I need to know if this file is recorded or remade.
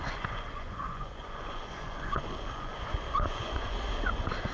remade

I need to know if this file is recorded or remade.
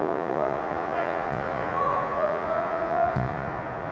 remade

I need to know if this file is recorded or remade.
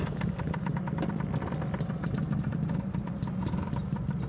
recorded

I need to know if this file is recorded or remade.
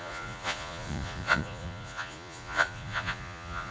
remade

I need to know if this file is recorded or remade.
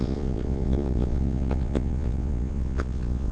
remade